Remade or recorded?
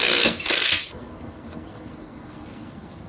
remade